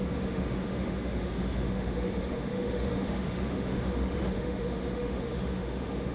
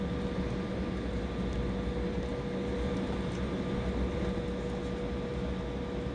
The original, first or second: second